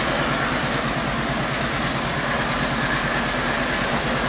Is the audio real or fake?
real